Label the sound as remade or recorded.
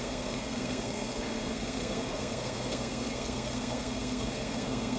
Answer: remade